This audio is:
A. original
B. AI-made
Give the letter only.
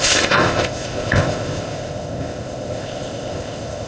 B